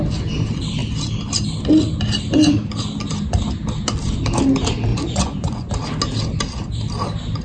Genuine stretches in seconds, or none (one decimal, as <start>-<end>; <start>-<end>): 0.0-4.9; 5.7-7.4